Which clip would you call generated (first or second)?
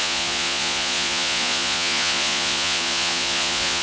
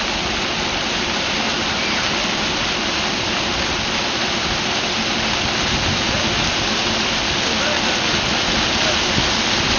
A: first